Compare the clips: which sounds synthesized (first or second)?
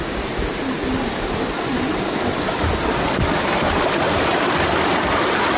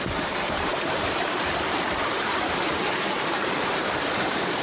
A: second